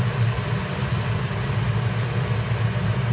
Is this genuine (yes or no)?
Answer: yes